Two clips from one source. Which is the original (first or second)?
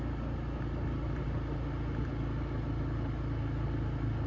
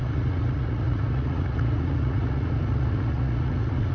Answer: first